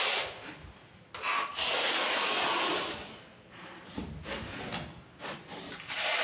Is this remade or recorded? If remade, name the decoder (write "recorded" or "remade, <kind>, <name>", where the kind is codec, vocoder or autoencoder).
recorded